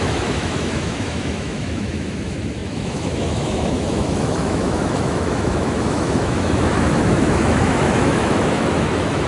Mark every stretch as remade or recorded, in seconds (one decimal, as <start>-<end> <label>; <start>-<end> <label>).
0.0-9.3 remade